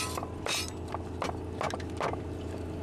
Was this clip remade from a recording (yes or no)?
no